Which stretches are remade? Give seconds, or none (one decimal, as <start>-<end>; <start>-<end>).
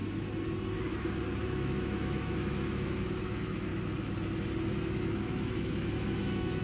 1.4-3.7; 4.7-6.6